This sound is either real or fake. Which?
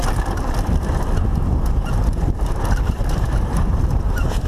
real